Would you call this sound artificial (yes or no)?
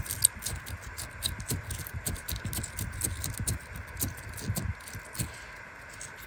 no